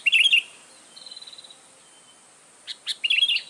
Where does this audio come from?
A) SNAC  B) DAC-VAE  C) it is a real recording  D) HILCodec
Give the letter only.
C